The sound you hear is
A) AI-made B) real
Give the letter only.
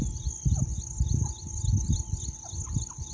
B